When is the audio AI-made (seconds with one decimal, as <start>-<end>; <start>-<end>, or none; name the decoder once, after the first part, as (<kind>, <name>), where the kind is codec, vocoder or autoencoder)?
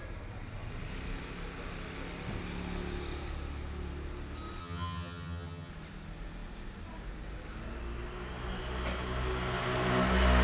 4.6-5.7 (vocoder, HiFi-GAN)